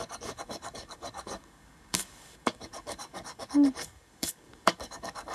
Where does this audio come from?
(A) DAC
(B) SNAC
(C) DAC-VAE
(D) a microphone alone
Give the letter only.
A